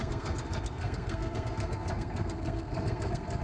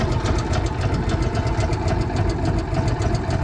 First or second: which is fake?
first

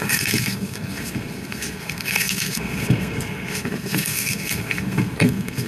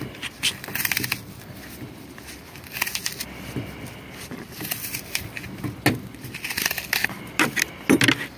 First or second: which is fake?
first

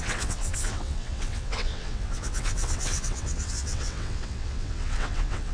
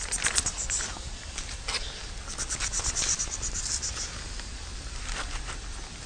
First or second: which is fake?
first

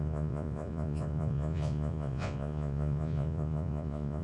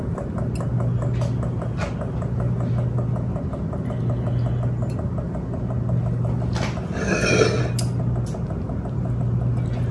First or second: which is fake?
first